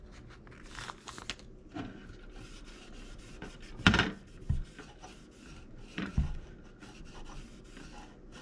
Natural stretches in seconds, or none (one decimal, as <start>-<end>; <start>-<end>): 0.0-5.9; 6.5-8.4